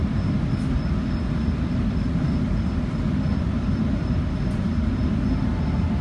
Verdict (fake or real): real